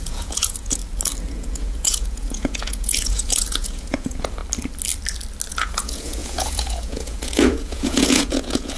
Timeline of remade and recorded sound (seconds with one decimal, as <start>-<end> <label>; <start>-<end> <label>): 0.0-0.8 remade; 0.8-1.3 recorded; 1.3-4.4 remade; 4.4-5.5 recorded; 5.5-8.8 remade